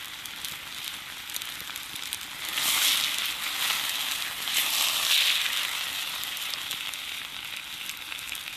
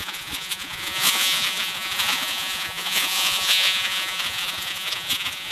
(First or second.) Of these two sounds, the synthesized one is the second